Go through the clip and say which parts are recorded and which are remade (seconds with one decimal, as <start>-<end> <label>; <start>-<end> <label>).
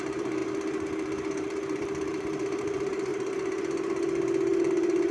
0.0-3.1 remade; 3.1-4.6 recorded; 4.6-5.1 remade